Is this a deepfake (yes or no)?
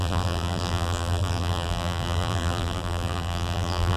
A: yes